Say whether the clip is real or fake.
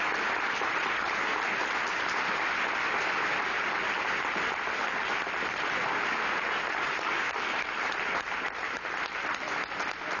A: real